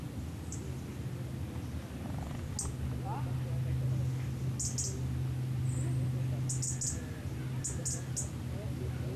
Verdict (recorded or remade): recorded